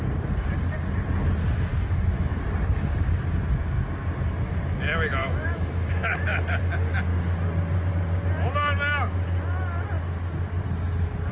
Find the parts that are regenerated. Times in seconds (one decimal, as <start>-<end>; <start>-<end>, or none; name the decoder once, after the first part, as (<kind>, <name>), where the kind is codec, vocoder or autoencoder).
1.7-2.4 (autoencoder, DAC-VAE); 5.2-6.6